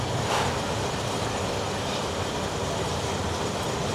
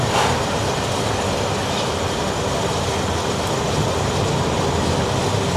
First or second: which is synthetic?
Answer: first